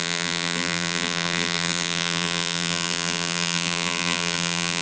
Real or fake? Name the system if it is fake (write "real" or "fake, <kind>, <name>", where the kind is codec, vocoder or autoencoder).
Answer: fake, vocoder, BigVGAN v2